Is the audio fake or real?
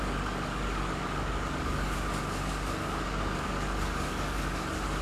fake